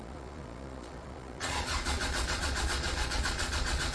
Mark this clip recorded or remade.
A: remade